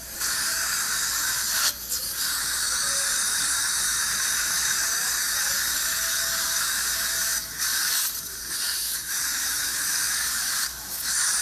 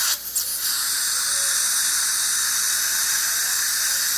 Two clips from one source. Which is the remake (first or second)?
first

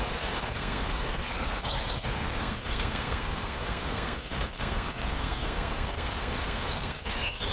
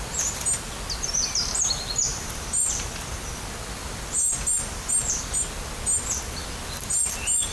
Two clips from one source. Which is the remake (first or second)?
first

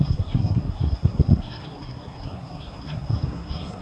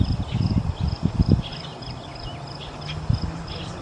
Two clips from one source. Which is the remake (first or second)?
first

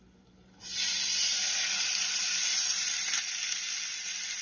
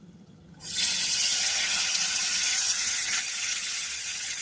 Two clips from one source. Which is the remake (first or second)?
second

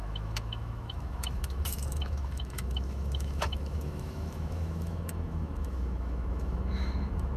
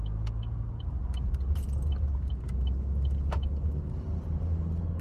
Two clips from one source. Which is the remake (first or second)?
first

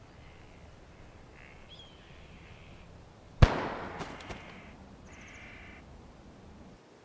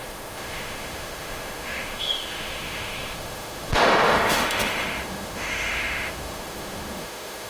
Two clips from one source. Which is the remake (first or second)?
second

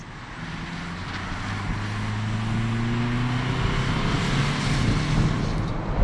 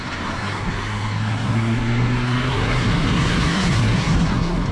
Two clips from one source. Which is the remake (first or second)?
second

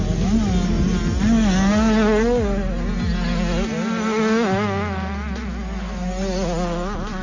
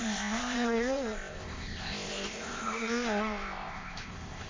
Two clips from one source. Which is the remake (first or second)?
second